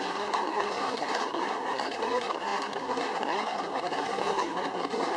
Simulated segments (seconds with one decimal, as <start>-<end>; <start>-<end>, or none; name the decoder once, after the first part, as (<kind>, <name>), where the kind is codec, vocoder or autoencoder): 0.0-5.2 (codec, SNAC)